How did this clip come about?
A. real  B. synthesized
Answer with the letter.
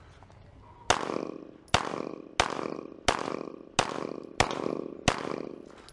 A